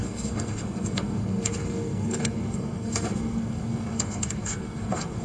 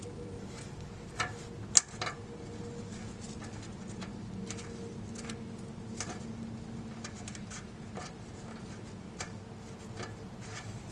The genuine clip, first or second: second